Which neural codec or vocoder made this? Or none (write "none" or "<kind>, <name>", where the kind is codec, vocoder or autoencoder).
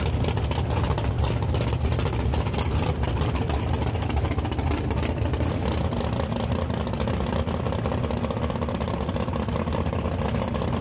none